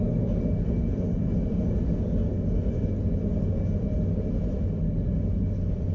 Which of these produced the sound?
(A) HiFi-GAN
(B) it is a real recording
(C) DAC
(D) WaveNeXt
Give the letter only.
B